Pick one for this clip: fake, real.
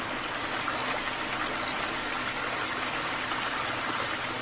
real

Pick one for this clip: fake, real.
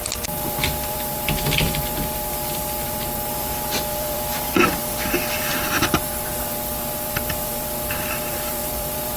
fake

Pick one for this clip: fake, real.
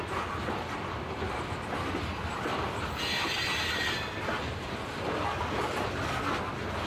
real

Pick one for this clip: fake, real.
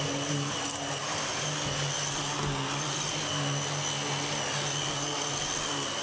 real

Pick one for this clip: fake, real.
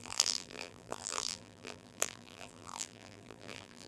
fake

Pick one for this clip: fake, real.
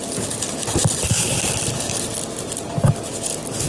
real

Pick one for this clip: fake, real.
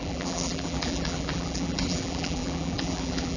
fake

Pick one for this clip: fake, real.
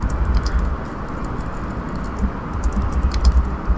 real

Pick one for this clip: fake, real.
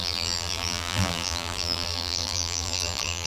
fake